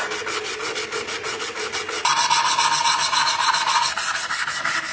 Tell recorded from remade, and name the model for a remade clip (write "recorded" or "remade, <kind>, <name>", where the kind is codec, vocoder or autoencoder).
recorded